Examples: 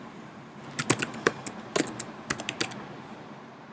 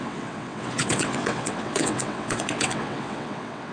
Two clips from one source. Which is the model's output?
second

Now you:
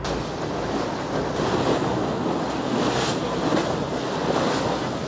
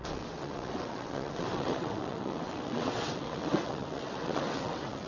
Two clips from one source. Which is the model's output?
second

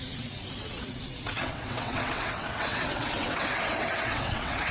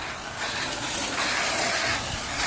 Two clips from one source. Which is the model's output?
first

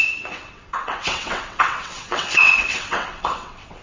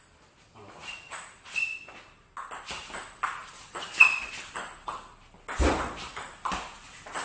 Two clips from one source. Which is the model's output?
first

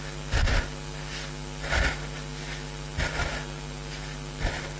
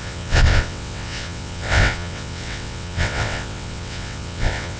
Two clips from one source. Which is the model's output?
second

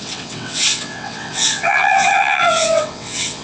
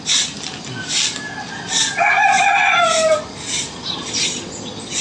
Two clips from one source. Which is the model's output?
first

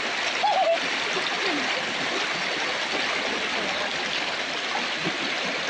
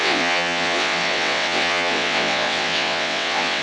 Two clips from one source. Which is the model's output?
second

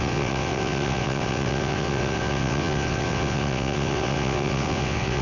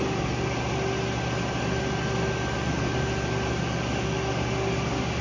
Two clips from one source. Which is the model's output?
first